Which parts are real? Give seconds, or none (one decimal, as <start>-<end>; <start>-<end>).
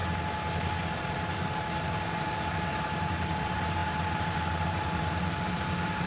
0.0-1.9